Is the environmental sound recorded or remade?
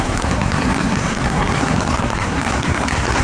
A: remade